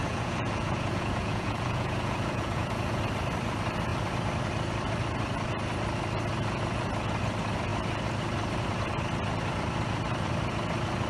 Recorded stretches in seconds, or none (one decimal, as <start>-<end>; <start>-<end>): 3.0-11.1